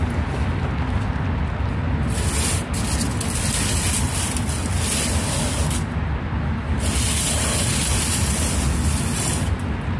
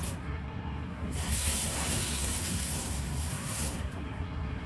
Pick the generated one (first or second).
second